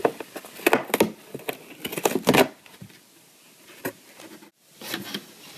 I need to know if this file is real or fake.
real